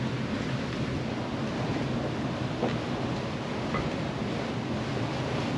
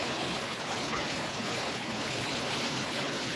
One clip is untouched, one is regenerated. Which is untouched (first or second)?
first